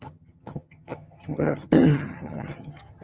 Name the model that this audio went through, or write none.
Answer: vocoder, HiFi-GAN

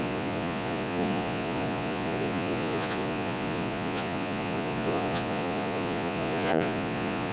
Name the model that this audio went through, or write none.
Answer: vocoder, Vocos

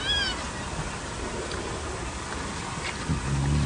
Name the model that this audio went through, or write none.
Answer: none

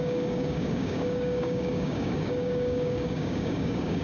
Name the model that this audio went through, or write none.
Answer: codec, DAC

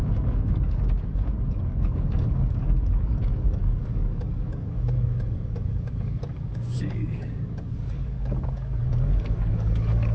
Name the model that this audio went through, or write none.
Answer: codec, DAC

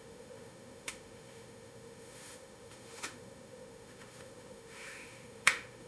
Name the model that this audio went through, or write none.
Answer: autoencoder, DAC-VAE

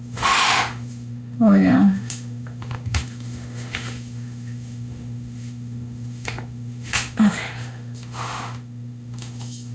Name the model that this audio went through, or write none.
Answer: autoencoder, DAC-VAE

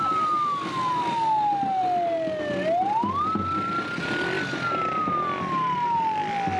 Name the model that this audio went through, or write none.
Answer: none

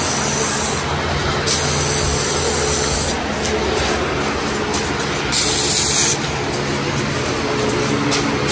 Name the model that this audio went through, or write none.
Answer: none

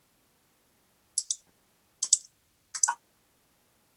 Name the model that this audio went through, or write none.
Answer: none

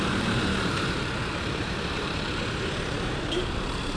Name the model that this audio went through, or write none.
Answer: vocoder, BigVGAN v2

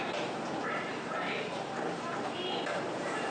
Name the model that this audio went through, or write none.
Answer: vocoder, BigVGAN v2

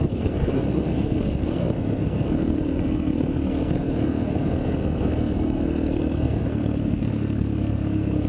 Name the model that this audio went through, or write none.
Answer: codec, SNAC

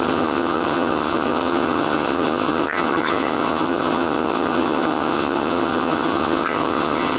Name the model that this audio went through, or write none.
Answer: vocoder, HiFi-GAN